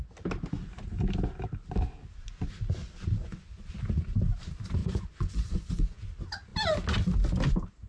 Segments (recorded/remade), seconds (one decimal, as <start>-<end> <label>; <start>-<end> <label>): 0.0-3.2 recorded; 3.2-3.7 remade; 3.7-4.8 recorded; 4.8-6.0 remade; 6.0-7.9 recorded